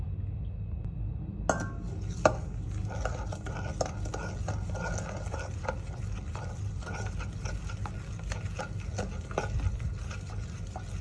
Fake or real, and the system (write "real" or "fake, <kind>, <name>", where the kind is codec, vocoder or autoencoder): real